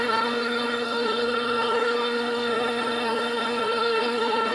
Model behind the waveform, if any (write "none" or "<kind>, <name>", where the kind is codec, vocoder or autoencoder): codec, SNAC